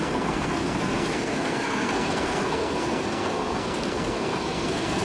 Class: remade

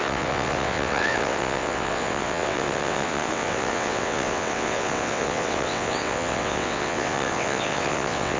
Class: remade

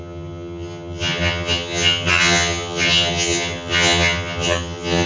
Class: remade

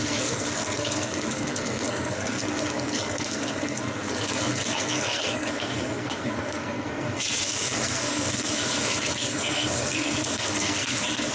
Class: remade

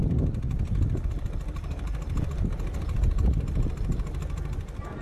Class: recorded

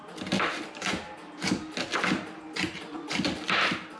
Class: recorded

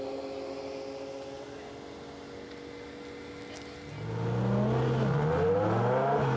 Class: recorded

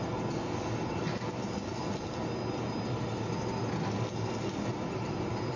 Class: recorded